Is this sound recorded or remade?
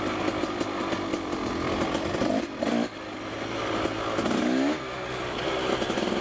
recorded